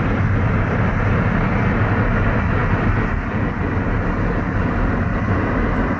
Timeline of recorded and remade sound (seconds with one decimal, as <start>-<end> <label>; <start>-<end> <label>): 0.0-6.0 recorded